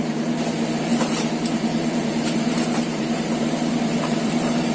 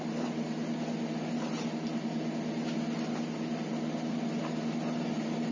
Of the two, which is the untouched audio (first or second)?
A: second